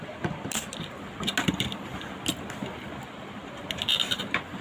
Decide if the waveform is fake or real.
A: real